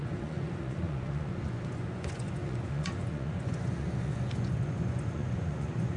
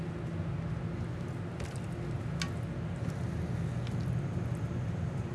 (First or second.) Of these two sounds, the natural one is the second